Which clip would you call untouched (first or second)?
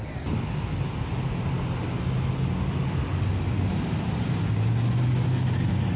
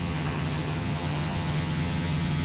first